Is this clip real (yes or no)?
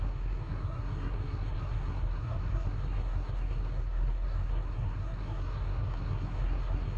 no